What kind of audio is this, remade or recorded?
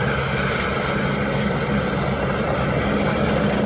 recorded